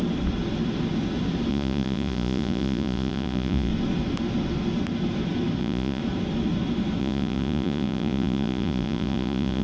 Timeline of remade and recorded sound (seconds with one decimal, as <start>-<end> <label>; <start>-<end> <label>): 0.0-1.5 recorded; 1.5-3.7 remade; 3.7-5.6 recorded; 5.6-6.0 remade; 6.0-7.0 recorded; 7.0-9.6 remade